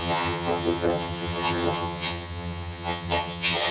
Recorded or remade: remade